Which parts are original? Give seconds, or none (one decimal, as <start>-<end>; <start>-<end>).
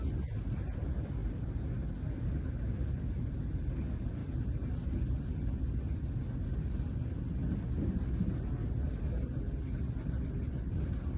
0.0-11.2